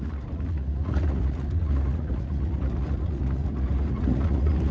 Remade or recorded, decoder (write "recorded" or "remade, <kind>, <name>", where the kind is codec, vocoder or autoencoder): remade, vocoder, Vocos